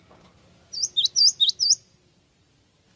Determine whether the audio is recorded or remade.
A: recorded